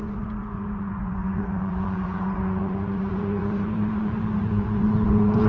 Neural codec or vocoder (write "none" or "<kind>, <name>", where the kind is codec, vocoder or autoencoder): vocoder, Vocos